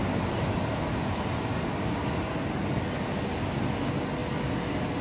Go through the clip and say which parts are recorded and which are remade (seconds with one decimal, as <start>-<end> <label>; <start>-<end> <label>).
0.0-5.0 recorded